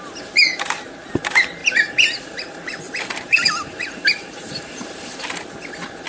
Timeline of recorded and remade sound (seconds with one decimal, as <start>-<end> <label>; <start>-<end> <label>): 0.0-1.6 recorded; 1.6-5.3 remade; 5.3-6.1 recorded